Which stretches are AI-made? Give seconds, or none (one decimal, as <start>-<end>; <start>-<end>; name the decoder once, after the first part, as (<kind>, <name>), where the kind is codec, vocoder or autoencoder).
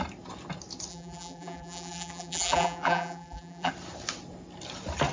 0.9-3.7 (vocoder, BigVGAN v2)